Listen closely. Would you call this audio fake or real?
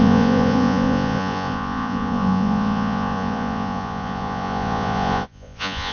fake